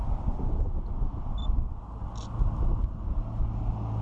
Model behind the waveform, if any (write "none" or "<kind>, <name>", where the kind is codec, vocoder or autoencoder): none